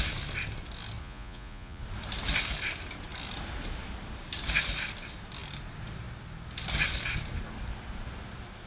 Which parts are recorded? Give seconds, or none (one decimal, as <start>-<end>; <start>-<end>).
0.0-1.0; 1.8-8.7